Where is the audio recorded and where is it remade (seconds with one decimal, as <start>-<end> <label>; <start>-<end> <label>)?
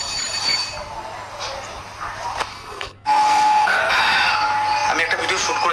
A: 0.0-2.5 recorded; 2.5-3.9 remade; 3.9-5.7 recorded